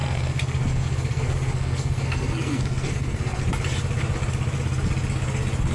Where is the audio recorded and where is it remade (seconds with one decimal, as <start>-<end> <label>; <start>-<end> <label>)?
0.0-3.4 remade; 3.4-5.7 recorded